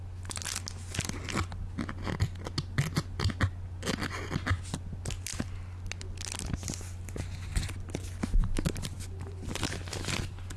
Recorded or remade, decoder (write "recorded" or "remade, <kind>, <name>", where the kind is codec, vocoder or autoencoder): recorded